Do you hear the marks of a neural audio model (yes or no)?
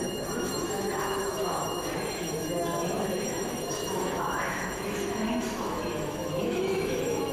yes